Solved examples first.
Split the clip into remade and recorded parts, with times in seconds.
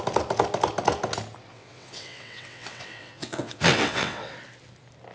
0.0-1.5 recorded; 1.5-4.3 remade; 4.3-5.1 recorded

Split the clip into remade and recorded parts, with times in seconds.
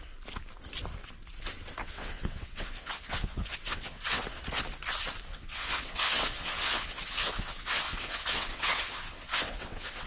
0.0-1.8 recorded; 1.8-4.2 remade; 4.2-5.3 recorded; 5.3-10.1 remade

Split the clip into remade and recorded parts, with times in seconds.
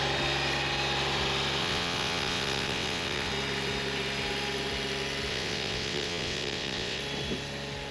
0.0-1.6 recorded; 1.6-3.3 remade; 3.3-5.3 recorded; 5.3-7.0 remade; 7.0-7.9 recorded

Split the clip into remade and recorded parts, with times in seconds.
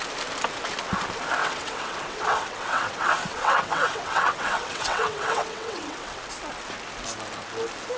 0.0-1.4 recorded; 1.4-6.2 remade; 6.2-8.0 recorded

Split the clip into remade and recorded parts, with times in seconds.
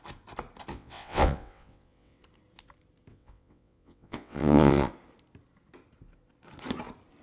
0.0-0.7 recorded; 0.7-2.2 remade; 2.2-3.1 recorded; 3.1-4.9 remade; 4.9-7.2 recorded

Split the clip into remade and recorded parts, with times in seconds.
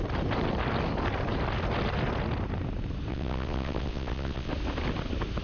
0.0-3.1 recorded; 3.1-4.5 remade; 4.5-5.4 recorded